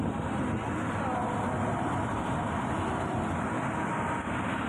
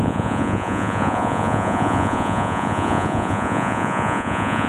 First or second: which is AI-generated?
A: second